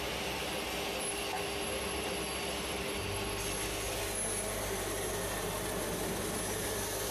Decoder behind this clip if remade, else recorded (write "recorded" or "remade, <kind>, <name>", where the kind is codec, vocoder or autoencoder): recorded